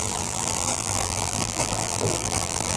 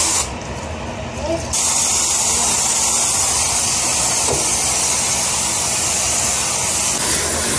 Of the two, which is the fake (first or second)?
first